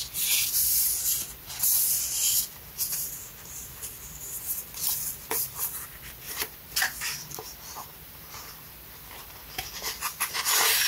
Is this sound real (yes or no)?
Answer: no